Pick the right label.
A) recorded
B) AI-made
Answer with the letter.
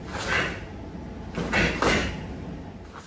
A